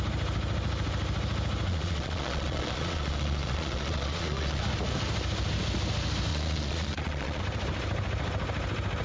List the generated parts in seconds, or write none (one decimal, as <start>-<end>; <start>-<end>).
1.7-4.6; 6.3-7.4